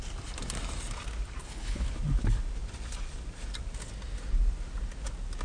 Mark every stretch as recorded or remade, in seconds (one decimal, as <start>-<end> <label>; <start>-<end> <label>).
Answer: 0.0-1.4 recorded; 1.4-1.9 remade; 1.9-5.4 recorded